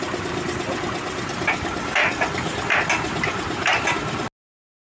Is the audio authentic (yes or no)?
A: yes